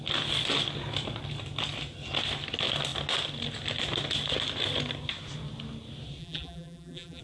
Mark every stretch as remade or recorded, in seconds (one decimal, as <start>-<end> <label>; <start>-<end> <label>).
0.0-6.2 recorded; 6.2-7.2 remade